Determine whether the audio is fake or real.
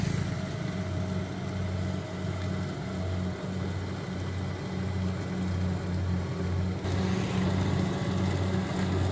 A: real